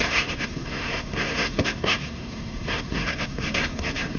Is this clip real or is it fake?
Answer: fake